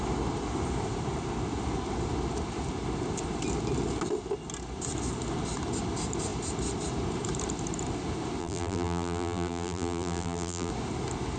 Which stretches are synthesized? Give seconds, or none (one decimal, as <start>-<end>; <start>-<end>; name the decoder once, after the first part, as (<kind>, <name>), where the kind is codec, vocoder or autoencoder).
8.4-10.7 (vocoder, BigVGAN v2)